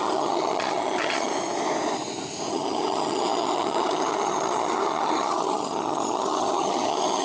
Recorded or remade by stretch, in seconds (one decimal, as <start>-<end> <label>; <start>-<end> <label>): 0.0-1.3 remade; 1.3-2.5 recorded; 2.5-7.2 remade

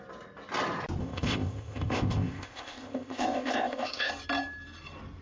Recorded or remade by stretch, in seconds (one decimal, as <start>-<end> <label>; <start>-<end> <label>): 0.0-1.0 recorded; 1.0-4.1 remade; 4.1-5.2 recorded

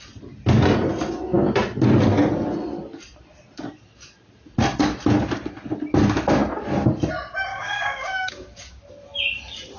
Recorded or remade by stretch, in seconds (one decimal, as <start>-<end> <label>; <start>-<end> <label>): 0.0-7.5 recorded; 7.5-8.8 remade; 8.8-9.8 recorded

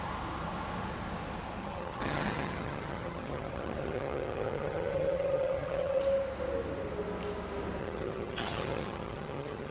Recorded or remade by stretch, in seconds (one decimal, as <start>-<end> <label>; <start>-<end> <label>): 0.0-1.6 recorded; 1.6-6.0 remade; 6.0-7.8 recorded; 7.8-9.7 remade

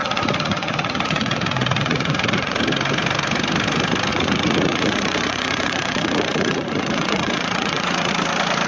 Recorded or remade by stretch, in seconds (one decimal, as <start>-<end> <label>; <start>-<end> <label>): 0.0-2.6 remade; 2.6-4.1 recorded; 4.1-8.1 remade; 8.1-8.7 recorded

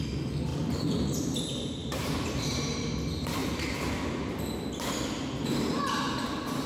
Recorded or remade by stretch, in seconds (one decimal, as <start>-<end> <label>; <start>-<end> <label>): 0.0-1.8 recorded; 1.8-2.9 remade; 2.9-6.7 recorded